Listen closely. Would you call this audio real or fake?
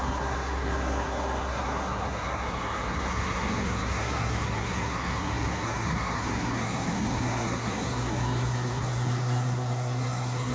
fake